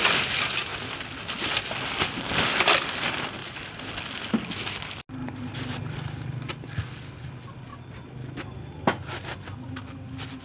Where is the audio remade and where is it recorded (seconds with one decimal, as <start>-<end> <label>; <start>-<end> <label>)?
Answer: 0.0-3.4 recorded; 3.4-3.9 remade; 3.9-10.4 recorded